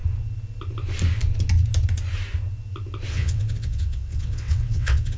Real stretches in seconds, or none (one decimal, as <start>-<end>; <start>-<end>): 0.0-3.1